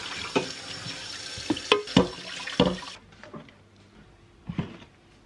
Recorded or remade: recorded